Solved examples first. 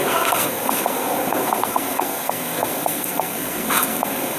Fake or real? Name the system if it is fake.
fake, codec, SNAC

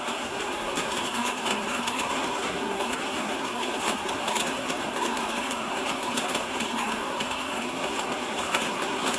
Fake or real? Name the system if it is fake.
fake, codec, SNAC